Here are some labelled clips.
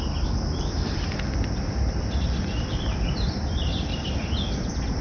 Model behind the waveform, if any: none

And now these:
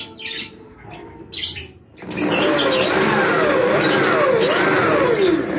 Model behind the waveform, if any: none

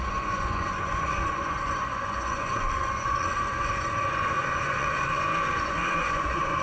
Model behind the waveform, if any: vocoder, Vocos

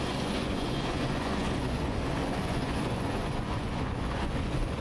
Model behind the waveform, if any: vocoder, Vocos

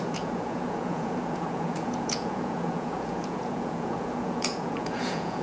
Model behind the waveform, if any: vocoder, Vocos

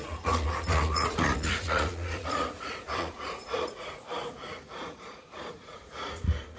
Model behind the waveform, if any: vocoder, Vocos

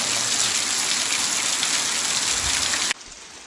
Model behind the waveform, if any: none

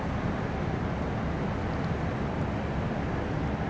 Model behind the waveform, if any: none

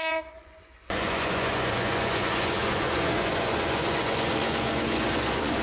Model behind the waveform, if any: vocoder, Vocos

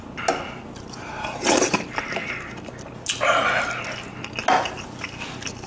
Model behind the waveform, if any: none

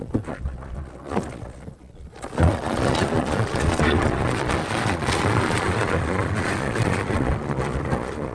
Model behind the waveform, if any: vocoder, Vocos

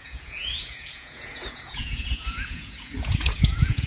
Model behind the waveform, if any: vocoder, Vocos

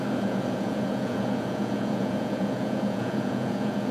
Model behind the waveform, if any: vocoder, Vocos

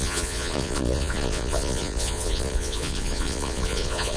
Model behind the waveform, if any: vocoder, Vocos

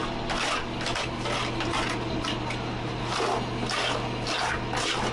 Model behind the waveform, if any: none